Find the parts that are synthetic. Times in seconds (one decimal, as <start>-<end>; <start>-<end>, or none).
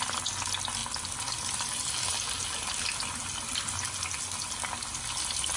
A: none